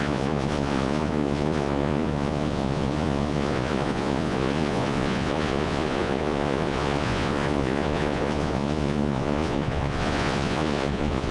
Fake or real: fake